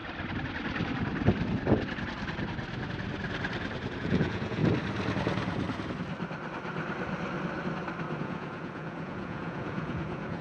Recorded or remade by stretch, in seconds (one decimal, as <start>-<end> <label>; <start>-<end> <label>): 0.0-4.0 recorded; 4.0-4.6 remade; 4.6-8.2 recorded; 8.2-10.4 remade